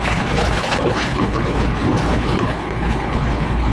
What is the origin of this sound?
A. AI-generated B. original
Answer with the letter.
A